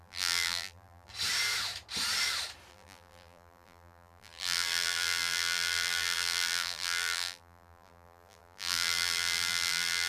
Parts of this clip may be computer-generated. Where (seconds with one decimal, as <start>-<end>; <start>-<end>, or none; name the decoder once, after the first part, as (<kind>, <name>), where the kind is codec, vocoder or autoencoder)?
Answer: 0.0-1.1 (vocoder, BigVGAN v2); 2.7-10.1